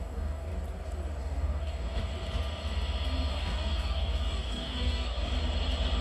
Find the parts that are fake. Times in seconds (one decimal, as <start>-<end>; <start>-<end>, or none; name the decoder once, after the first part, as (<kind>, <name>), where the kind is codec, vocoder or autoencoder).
0.0-0.5 (codec, DAC); 1.2-2.0; 3.3-5.3